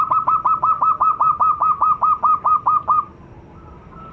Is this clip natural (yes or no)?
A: yes